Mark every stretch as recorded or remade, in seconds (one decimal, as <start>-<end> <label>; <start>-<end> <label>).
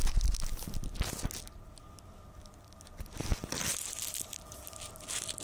0.0-5.4 recorded